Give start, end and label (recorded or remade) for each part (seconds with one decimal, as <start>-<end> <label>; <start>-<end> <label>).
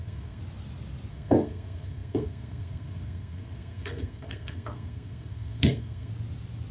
0.0-0.4 remade; 0.4-1.1 recorded; 1.1-6.1 remade; 6.1-6.7 recorded